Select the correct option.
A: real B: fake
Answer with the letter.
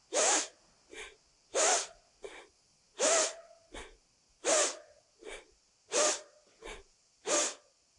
A